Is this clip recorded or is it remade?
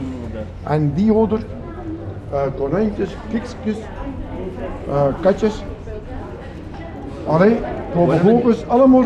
recorded